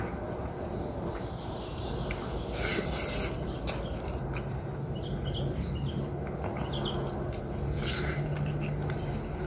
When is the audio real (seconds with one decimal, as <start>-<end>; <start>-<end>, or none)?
0.0-9.5